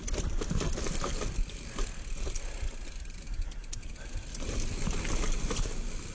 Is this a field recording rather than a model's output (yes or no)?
no